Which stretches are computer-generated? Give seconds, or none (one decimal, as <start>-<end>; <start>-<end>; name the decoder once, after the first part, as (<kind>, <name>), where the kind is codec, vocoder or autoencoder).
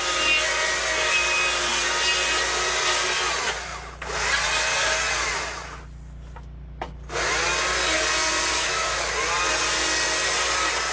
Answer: 8.5-9.1 (autoencoder, DAC-VAE)